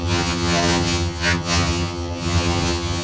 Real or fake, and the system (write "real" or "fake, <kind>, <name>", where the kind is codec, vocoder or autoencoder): fake, vocoder, HiFi-GAN